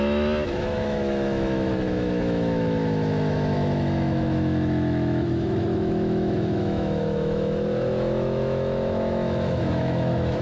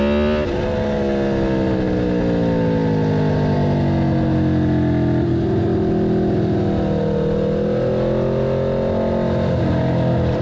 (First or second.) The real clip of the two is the second